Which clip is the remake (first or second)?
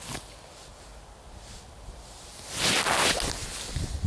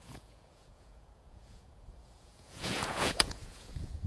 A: second